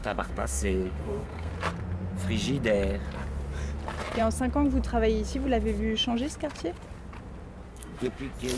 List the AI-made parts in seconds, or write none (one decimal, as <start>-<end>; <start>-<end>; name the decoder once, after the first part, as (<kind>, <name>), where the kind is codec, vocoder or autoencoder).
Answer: 0.0-1.5 (codec, SNAC); 7.7-8.2